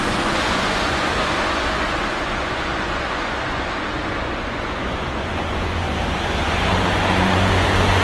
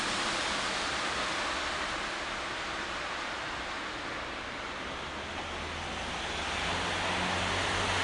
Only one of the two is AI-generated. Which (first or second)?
first